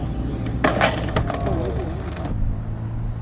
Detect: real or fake real